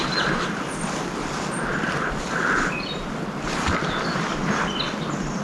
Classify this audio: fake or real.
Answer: real